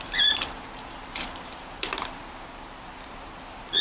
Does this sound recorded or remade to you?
recorded